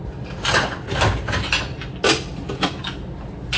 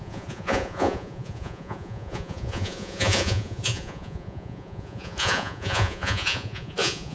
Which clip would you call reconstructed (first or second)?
second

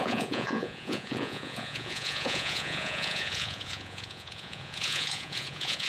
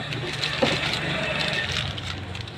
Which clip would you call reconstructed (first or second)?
first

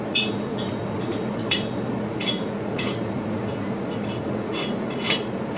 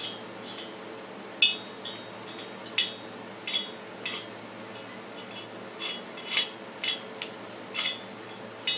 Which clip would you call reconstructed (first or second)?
first